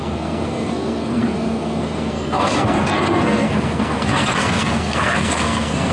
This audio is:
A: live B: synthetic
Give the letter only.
B